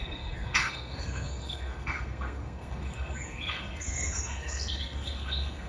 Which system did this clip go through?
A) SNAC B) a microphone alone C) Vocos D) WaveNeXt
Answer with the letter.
A